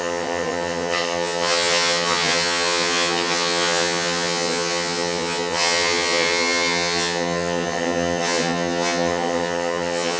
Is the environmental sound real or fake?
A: fake